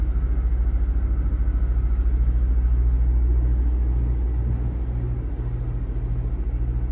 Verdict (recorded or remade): recorded